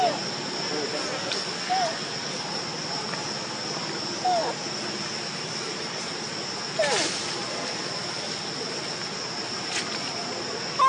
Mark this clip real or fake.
real